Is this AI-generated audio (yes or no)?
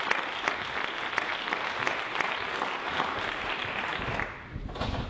no